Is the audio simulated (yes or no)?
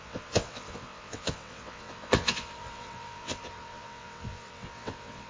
yes